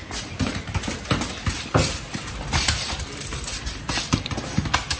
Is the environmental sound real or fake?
real